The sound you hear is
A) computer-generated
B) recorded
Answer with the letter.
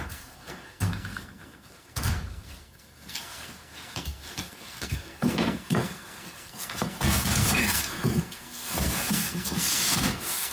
A